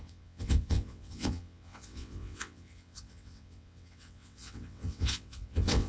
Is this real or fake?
fake